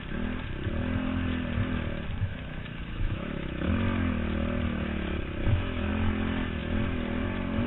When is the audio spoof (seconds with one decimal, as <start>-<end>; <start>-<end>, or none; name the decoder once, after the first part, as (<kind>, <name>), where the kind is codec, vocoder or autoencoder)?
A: 2.3-3.7 (autoencoder, DAC-VAE); 5.4-5.9